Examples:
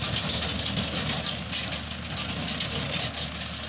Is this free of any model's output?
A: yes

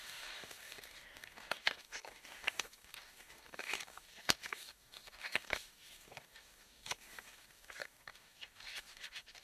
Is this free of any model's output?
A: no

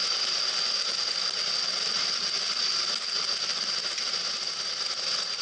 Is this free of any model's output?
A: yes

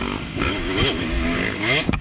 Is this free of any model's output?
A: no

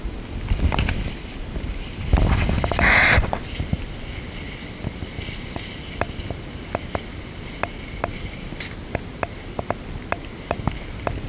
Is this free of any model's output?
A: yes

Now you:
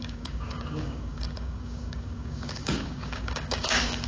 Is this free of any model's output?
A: no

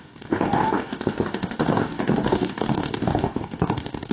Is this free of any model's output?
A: no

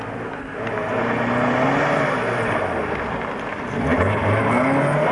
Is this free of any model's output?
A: yes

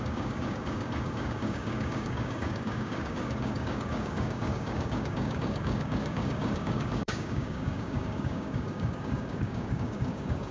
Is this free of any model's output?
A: no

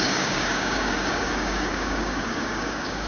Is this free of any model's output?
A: no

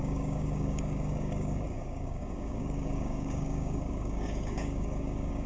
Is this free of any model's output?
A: no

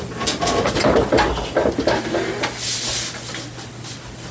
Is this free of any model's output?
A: yes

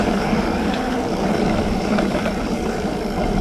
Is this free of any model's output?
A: no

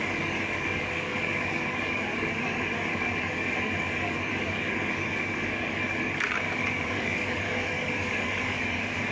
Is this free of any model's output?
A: no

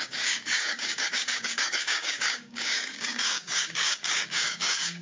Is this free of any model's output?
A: no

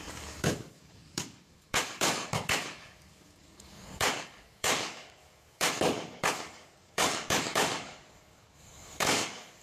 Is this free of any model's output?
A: no